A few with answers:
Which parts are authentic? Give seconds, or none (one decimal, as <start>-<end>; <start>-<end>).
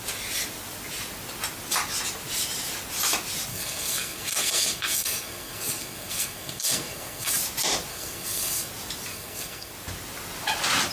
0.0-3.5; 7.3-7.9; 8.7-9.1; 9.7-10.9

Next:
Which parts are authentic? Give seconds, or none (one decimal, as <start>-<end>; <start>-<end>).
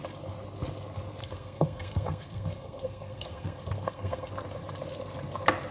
0.0-1.2; 4.3-5.7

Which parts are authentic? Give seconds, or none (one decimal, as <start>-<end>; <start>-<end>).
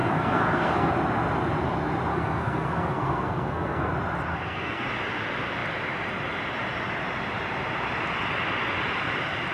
0.9-2.1; 3.9-4.3; 4.9-9.5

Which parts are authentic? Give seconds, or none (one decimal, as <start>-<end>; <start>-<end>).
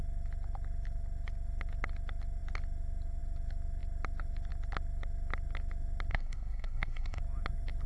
0.0-6.1; 7.2-7.9